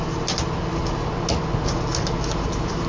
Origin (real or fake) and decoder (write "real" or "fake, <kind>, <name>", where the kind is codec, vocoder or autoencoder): real